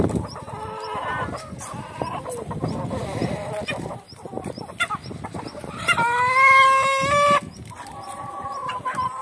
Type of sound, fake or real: real